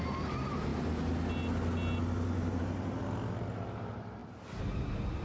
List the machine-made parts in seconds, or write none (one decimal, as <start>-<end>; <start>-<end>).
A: none